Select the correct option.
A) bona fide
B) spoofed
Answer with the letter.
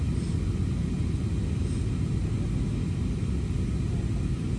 A